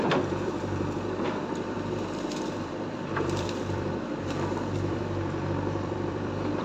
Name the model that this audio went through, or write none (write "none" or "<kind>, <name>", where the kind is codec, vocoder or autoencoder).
vocoder, BigVGAN v2